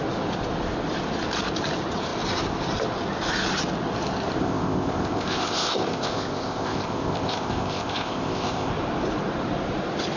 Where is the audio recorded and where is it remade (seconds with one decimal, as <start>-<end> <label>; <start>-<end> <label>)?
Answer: 0.0-4.4 recorded; 4.4-8.7 remade; 8.7-10.2 recorded